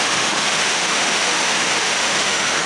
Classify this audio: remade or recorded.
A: remade